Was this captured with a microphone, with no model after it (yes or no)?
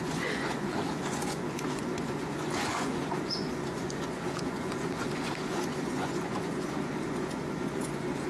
no